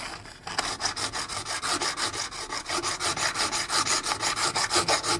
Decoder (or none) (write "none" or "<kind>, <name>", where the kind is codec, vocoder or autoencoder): none